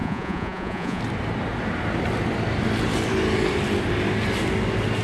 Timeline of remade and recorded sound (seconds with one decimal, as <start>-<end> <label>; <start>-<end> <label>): 0.0-1.0 remade; 1.0-5.0 recorded